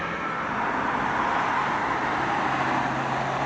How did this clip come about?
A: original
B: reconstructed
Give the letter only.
A